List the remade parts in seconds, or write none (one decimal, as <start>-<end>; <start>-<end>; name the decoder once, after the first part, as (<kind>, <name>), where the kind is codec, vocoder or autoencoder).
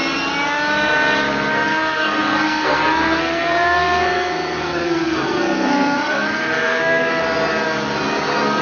1.5-7.2 (codec, SNAC)